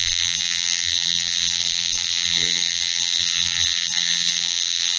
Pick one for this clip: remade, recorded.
remade